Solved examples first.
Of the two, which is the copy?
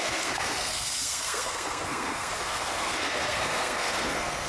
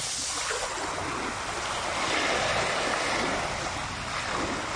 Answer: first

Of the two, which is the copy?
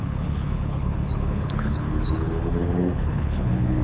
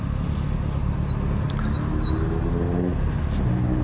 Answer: first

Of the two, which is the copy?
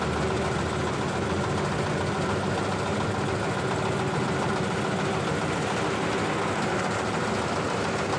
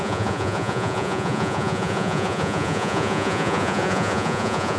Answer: second